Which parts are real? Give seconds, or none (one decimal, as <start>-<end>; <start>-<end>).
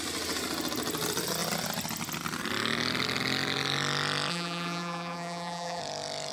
0.0-4.3; 5.8-6.3